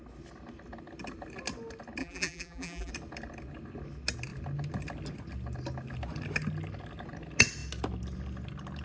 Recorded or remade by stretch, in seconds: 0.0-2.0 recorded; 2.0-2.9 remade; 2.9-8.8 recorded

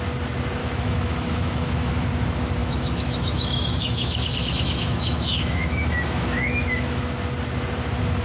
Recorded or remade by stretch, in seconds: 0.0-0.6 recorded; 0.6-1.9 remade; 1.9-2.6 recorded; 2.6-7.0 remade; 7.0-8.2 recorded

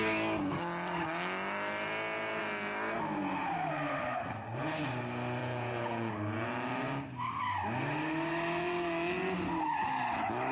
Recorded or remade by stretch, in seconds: 0.0-5.4 recorded; 5.4-6.1 remade; 6.1-10.5 recorded

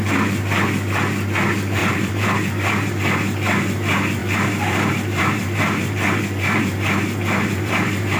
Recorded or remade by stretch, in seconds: 0.0-1.8 recorded; 1.8-2.9 remade; 2.9-4.2 recorded; 4.2-8.2 remade

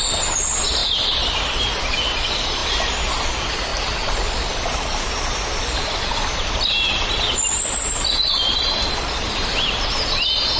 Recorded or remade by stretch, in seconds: 0.0-10.6 recorded

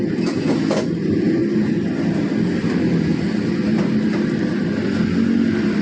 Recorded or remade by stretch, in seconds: 0.0-5.8 recorded